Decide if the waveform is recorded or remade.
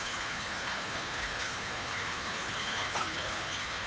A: remade